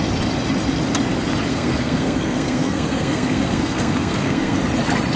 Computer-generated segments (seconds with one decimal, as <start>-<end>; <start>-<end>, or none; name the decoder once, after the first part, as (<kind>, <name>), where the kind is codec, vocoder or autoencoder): 1.5-4.6 (codec, SNAC)